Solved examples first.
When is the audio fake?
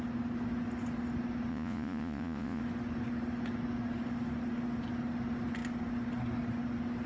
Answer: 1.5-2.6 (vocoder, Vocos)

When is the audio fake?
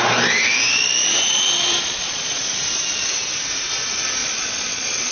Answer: 1.0-2.6 (vocoder, Vocos); 4.2-5.1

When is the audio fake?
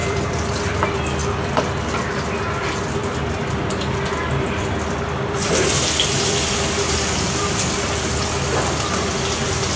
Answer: 0.0-0.5 (vocoder, BigVGAN v2)